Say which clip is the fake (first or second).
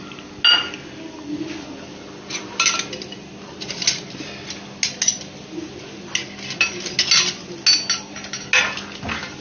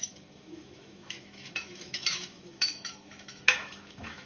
second